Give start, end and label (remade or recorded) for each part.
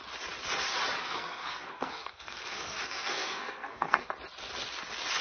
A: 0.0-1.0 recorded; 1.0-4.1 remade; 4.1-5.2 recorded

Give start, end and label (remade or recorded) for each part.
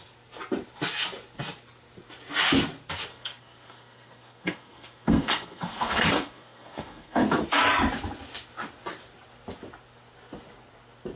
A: 0.0-3.1 recorded; 3.1-7.4 remade; 7.4-11.2 recorded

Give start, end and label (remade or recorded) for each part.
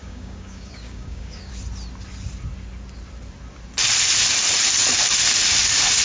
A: 0.0-1.5 remade; 1.5-6.0 recorded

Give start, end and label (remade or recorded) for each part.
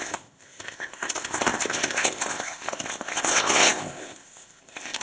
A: 0.0-5.0 remade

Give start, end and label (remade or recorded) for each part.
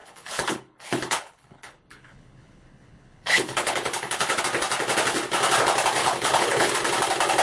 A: 0.0-4.4 remade; 4.4-6.0 recorded; 6.0-6.7 remade; 6.7-7.4 recorded